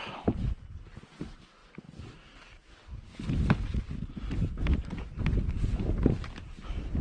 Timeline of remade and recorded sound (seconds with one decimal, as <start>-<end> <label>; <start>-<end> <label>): 0.0-7.0 recorded